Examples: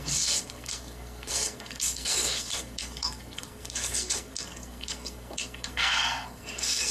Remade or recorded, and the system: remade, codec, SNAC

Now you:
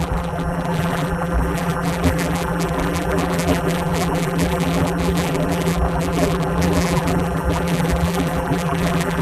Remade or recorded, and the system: remade, vocoder, BigVGAN v2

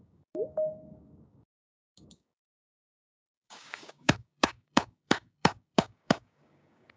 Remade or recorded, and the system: remade, codec, DAC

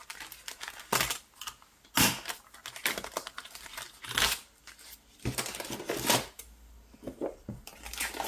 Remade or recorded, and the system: recorded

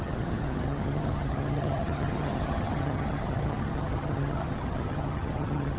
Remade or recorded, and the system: remade, vocoder, HiFi-GAN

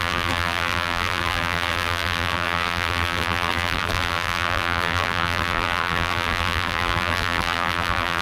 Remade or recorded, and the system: remade, vocoder, BigVGAN v2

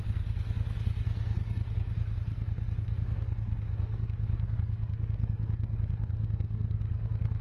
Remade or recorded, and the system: remade, codec, SNAC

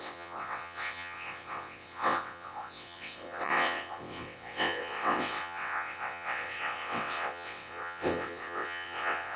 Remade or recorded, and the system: remade, vocoder, WaveNeXt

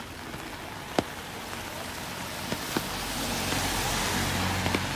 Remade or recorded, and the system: recorded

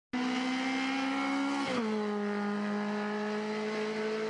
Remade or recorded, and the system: recorded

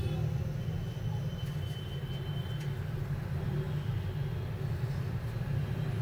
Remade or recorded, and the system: recorded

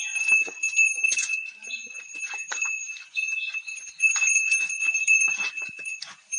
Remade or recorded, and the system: remade, vocoder, Vocos